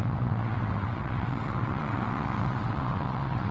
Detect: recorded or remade remade